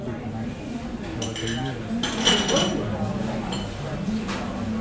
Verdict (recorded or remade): recorded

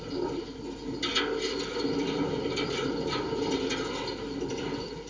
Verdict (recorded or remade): recorded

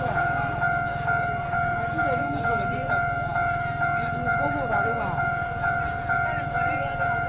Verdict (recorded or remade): remade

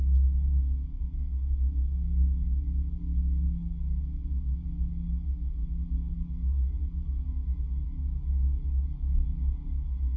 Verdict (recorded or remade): recorded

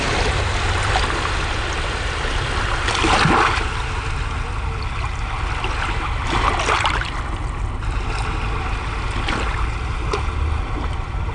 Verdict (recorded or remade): recorded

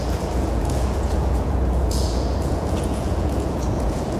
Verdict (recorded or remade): remade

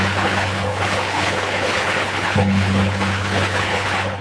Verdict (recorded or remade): remade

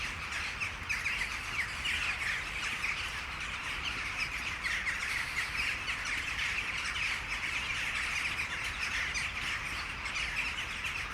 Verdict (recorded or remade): recorded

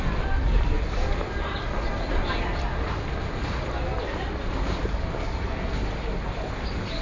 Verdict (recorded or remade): recorded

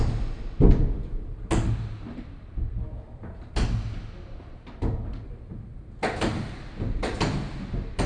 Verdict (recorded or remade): recorded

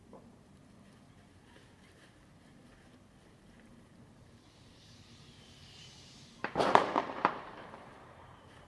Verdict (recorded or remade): remade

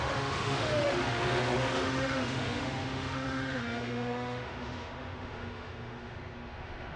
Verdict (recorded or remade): remade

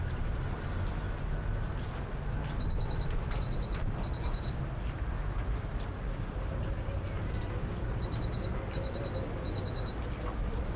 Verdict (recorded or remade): recorded